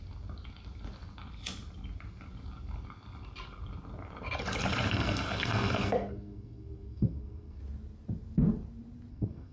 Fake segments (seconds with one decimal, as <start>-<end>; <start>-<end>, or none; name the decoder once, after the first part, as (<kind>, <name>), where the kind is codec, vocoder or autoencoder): 4.9-7.6 (codec, SNAC); 9.1-9.5